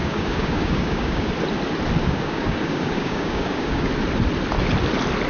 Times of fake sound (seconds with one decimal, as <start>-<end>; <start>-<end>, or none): 0.0-1.3; 2.0-3.9